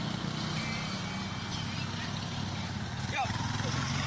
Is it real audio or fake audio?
real